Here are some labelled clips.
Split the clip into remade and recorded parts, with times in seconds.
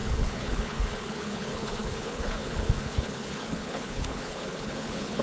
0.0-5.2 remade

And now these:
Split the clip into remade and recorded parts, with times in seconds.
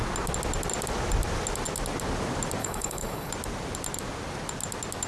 0.0-2.6 recorded; 2.6-3.3 remade; 3.3-5.1 recorded